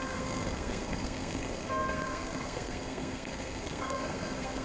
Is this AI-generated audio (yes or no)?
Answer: yes